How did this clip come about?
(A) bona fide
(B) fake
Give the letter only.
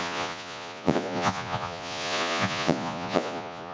B